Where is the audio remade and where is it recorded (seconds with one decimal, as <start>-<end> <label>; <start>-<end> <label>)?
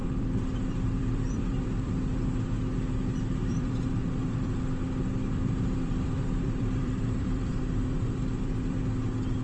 0.0-1.9 remade; 1.9-3.4 recorded; 3.4-3.9 remade; 3.9-5.2 recorded; 5.2-8.8 remade; 8.8-9.4 recorded